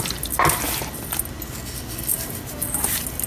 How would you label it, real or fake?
real